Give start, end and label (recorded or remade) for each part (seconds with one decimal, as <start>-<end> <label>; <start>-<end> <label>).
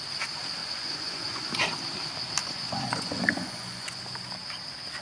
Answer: 0.0-0.6 recorded; 0.6-1.5 remade; 1.5-2.4 recorded; 2.4-4.0 remade; 4.0-5.0 recorded